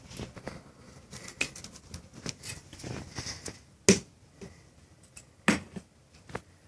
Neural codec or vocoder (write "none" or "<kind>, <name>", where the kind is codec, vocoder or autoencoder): none